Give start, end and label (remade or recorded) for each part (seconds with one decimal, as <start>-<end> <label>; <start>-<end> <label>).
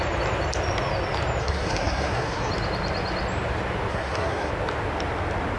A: 0.0-1.4 recorded; 1.4-2.5 remade; 2.5-3.9 recorded; 3.9-4.5 remade; 4.5-5.6 recorded